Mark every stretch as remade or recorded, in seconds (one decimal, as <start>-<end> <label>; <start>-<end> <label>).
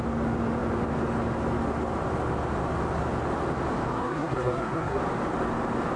0.0-3.9 recorded; 3.9-5.0 remade; 5.0-6.0 recorded